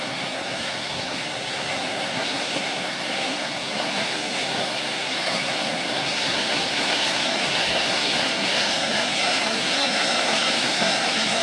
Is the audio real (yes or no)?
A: no